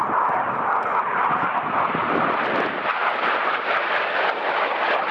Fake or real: real